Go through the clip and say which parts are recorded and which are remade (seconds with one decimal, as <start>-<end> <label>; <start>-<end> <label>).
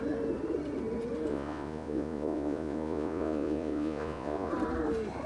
0.0-1.3 recorded; 1.3-4.5 remade; 4.5-5.3 recorded